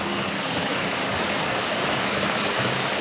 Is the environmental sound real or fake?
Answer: fake